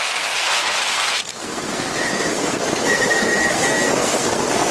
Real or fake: fake